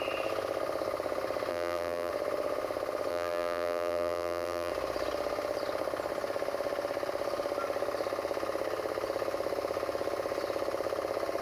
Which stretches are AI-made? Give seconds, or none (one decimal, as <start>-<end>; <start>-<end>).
1.5-2.1; 3.1-4.7